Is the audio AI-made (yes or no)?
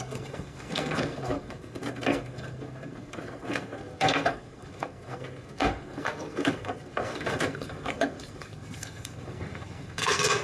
yes